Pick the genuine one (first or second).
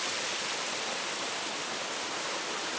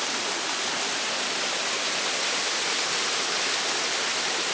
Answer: second